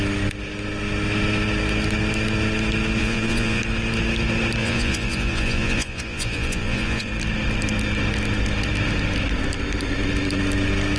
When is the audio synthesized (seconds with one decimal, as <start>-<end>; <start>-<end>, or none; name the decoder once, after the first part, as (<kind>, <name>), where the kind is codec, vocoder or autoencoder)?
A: 3.0-3.6 (vocoder, Vocos); 4.6-7.1